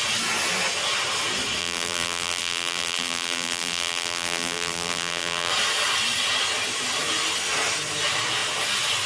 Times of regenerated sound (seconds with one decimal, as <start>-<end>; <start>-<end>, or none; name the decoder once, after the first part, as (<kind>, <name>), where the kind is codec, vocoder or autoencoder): 1.6-5.5 (vocoder, BigVGAN v2)